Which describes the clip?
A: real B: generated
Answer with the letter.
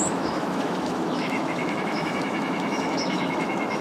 B